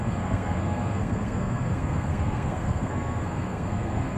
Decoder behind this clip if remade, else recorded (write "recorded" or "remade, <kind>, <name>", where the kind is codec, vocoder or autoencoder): remade, codec, SNAC